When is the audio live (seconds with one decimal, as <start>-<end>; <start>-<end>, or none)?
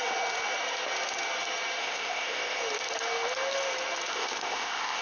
0.0-1.8; 2.6-4.1